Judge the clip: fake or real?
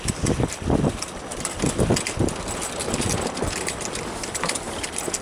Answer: real